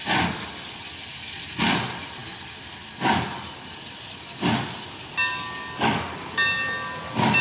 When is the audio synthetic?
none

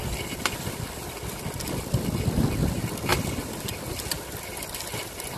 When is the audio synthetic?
0.0-1.3 (vocoder, BigVGAN v2)

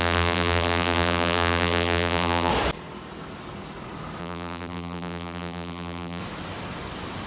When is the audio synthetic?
0.0-2.5 (vocoder, BigVGAN v2); 4.2-6.2

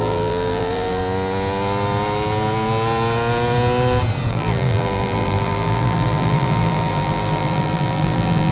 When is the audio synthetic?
0.0-1.0 (vocoder, BigVGAN v2); 4.3-8.5

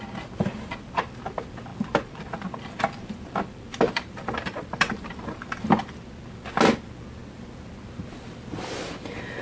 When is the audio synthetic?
1.7-2.4 (vocoder, BigVGAN v2); 3.0-6.1

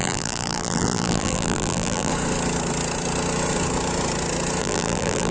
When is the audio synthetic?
0.0-2.1 (vocoder, BigVGAN v2); 4.6-5.3